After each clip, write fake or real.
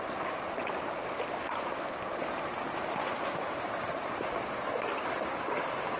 real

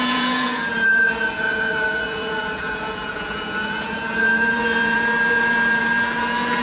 fake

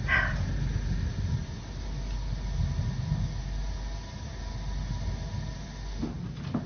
real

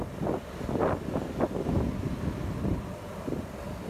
real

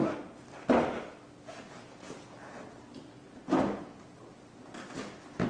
real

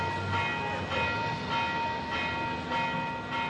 real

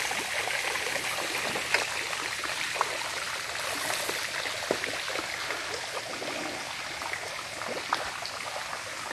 real